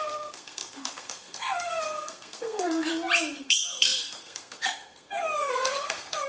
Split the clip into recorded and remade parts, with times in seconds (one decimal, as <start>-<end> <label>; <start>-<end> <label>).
0.0-2.9 remade; 2.9-3.4 recorded; 3.4-6.3 remade